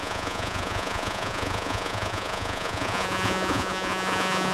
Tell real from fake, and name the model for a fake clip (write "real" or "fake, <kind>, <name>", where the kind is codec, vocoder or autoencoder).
fake, vocoder, Vocos